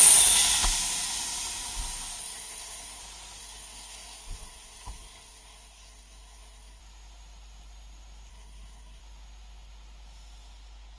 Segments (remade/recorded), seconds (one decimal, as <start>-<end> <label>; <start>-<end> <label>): 0.0-2.2 recorded; 2.2-3.0 remade; 3.0-3.4 recorded; 3.4-6.8 remade; 6.8-8.3 recorded; 8.3-9.0 remade; 9.0-11.0 recorded